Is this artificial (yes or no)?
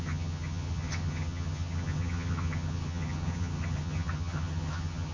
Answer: yes